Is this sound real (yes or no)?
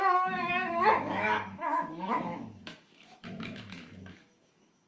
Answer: no